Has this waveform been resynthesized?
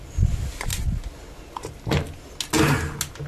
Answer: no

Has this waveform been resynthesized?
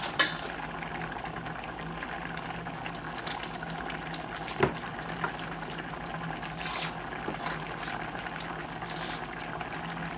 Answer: no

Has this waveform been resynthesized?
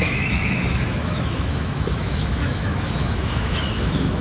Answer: yes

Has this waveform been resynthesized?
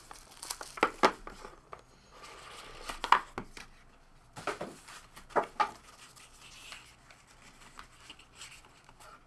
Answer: no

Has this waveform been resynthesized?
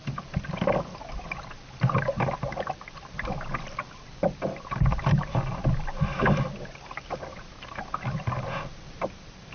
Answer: no